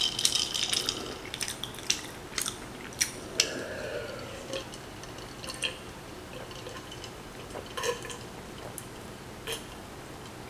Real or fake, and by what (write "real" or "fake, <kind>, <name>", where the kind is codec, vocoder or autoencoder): real